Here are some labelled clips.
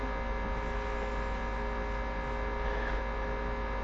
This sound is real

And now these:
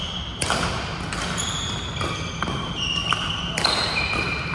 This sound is real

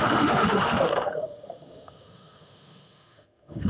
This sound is fake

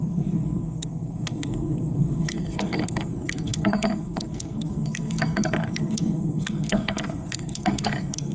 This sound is fake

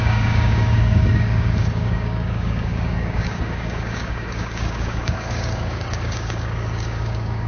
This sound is fake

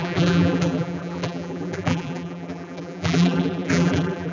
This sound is fake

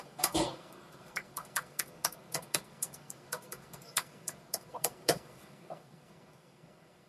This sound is fake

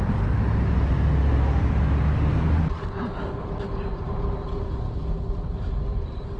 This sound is real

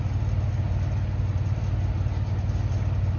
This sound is real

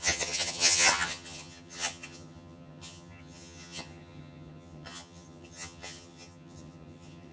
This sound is fake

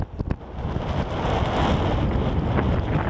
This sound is real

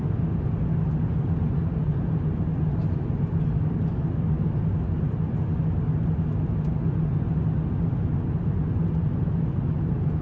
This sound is real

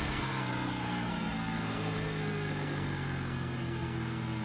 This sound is fake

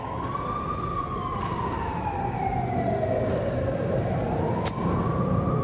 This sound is real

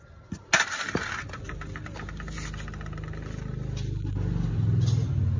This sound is real